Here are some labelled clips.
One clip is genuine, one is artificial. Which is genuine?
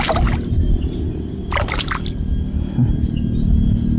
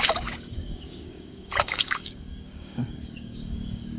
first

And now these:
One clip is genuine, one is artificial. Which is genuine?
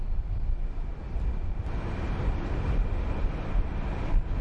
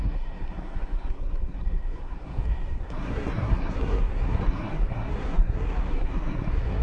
first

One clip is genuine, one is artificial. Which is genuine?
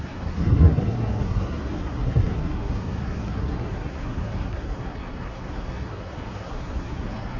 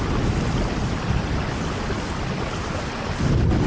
second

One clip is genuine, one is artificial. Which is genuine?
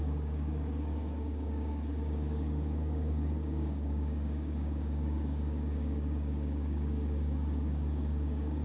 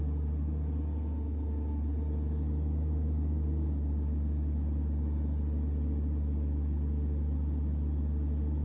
second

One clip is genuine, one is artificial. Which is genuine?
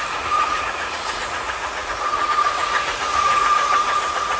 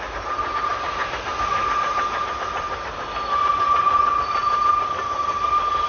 second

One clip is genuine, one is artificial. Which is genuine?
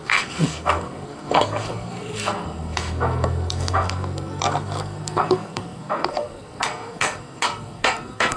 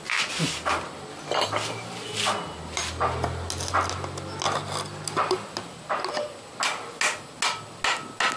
second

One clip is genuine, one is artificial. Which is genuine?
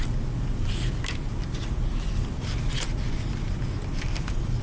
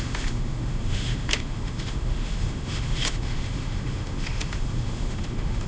first